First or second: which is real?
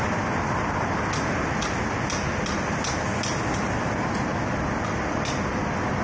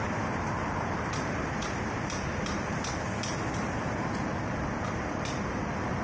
first